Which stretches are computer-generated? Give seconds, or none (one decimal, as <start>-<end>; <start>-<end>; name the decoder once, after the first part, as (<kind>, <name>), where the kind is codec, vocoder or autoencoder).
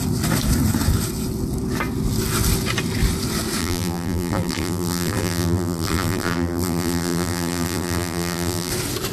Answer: 3.6-8.7 (vocoder, BigVGAN v2)